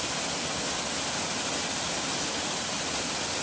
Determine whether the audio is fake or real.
real